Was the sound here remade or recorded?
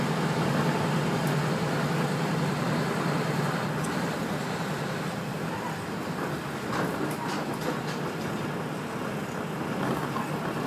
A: recorded